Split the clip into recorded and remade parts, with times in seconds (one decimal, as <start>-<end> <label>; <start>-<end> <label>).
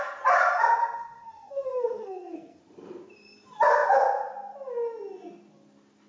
0.0-0.8 recorded; 0.8-2.6 remade; 2.6-6.1 recorded